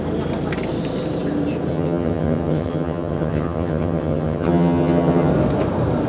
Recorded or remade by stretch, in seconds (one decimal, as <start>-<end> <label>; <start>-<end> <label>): 0.0-1.7 recorded; 1.7-5.3 remade; 5.3-6.1 recorded